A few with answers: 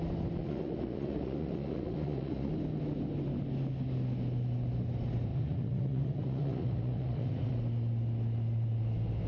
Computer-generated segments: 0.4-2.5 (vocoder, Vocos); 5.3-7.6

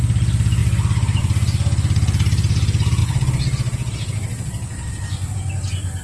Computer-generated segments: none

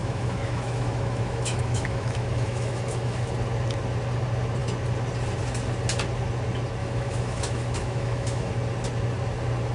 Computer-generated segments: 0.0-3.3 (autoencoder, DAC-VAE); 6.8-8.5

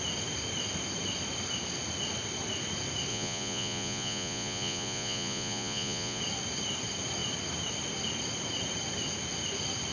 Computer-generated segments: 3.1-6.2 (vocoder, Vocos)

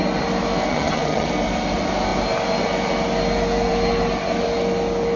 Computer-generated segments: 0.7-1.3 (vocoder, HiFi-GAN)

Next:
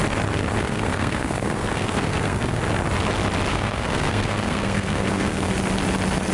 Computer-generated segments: 0.6-2.6 (codec, SNAC); 3.5-5.5

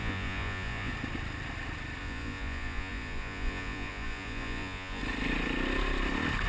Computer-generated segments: 0.0-0.9 (vocoder, Vocos); 2.0-5.0

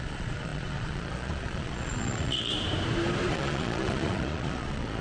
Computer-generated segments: 0.0-2.5 (vocoder, Vocos); 3.3-5.0